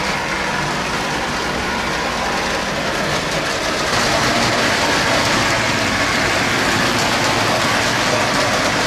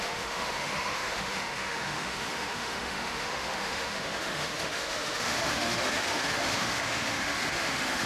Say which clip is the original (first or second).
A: first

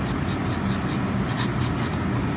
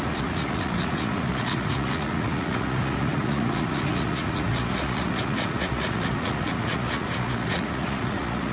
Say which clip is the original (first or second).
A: first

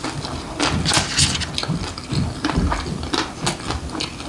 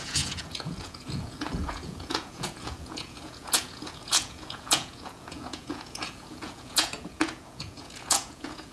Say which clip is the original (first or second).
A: first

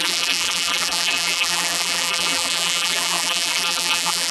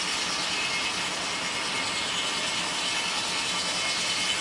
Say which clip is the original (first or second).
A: second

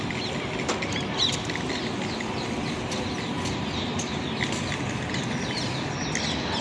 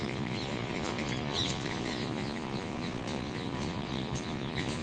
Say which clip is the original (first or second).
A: first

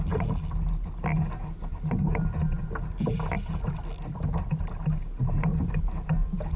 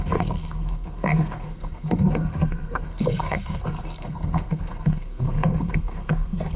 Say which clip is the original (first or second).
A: first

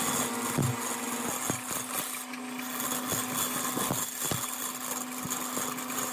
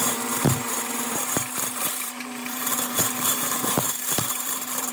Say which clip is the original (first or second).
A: first